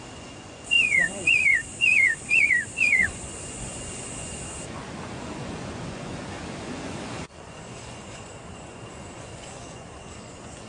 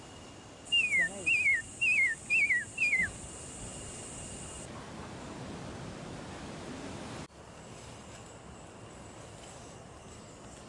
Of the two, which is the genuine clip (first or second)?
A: second